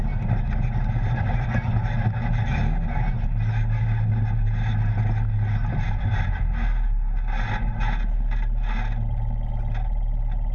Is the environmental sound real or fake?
real